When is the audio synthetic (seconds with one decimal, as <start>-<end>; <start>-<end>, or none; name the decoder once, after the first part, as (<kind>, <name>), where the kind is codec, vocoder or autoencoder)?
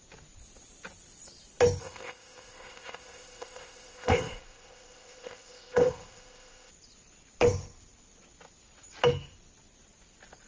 1.8-6.7 (codec, ZipCodec)